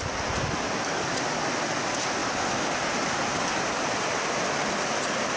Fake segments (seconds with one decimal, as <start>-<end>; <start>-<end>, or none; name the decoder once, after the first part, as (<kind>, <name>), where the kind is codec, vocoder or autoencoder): none